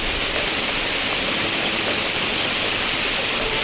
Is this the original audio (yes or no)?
yes